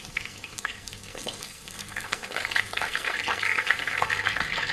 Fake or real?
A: fake